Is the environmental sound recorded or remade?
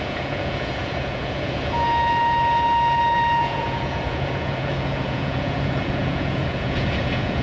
remade